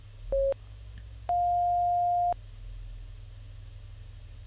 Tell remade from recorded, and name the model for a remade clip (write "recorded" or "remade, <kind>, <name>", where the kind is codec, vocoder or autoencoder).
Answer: recorded